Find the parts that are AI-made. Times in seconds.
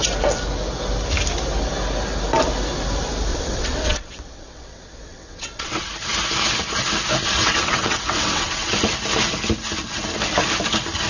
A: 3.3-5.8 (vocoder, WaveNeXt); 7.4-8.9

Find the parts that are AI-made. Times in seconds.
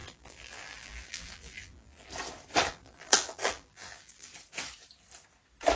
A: 0.0-2.1 (vocoder, BigVGAN v2); 2.7-4.3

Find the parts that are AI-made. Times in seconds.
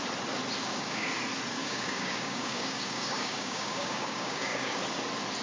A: 0.6-1.1 (codec, DAC); 1.6-4.8